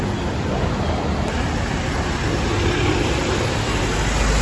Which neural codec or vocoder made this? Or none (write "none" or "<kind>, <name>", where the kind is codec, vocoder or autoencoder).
none